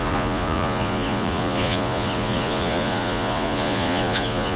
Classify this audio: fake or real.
fake